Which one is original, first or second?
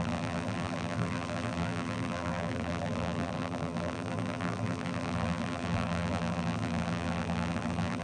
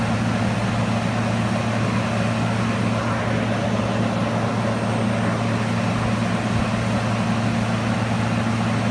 second